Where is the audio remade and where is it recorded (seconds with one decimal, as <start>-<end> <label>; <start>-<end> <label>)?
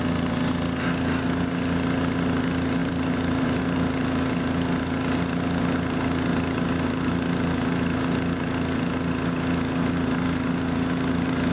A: 0.0-2.8 recorded; 2.8-3.6 remade; 3.6-11.5 recorded